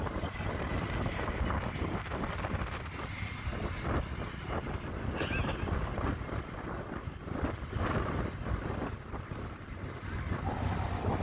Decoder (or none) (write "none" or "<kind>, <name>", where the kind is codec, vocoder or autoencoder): none